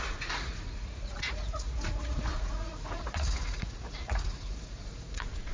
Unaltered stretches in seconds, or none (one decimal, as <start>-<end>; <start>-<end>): none